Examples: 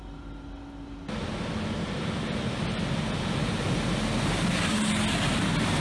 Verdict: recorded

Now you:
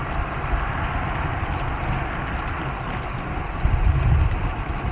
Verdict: recorded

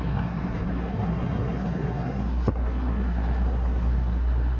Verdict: remade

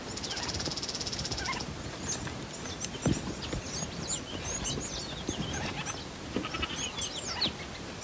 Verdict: recorded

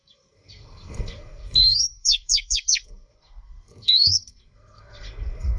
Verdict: remade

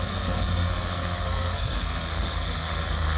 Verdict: remade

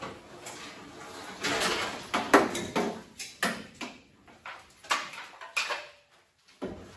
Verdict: recorded